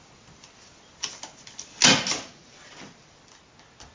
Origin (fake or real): real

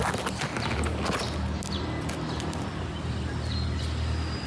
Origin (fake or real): real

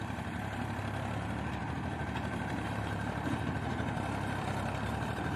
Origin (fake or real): fake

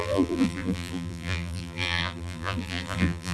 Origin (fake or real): fake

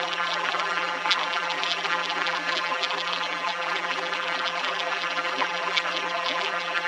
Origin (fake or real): fake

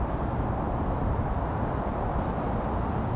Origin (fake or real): fake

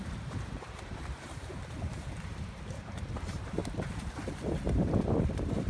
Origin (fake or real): fake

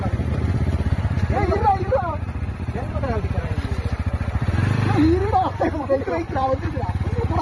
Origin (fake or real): fake